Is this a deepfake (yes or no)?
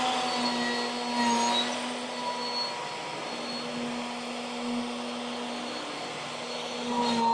no